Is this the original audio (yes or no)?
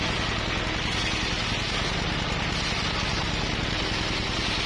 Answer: yes